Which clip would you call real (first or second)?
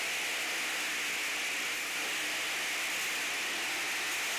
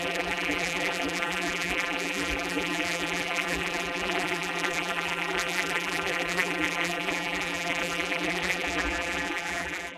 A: first